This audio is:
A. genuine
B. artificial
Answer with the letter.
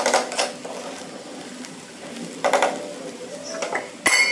A